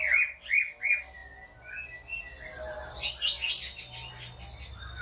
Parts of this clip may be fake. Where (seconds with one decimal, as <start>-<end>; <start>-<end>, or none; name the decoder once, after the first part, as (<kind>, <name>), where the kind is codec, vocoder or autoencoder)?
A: none